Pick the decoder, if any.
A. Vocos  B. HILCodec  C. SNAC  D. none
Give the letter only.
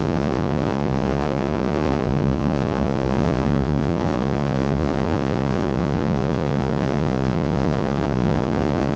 A